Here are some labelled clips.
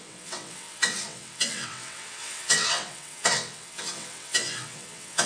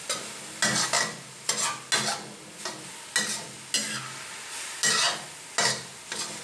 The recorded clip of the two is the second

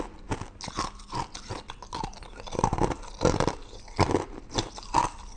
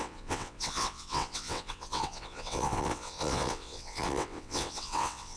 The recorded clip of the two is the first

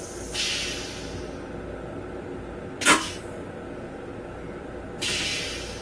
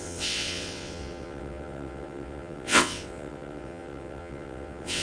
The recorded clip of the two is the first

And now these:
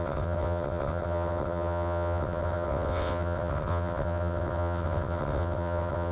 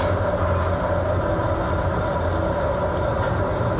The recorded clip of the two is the second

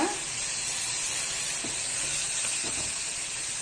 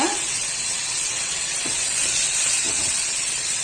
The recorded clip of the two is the first